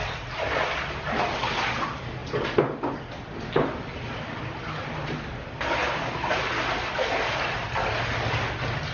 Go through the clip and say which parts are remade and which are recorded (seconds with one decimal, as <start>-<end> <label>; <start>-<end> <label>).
0.0-8.9 recorded